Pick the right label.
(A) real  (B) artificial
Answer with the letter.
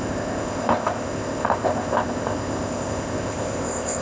B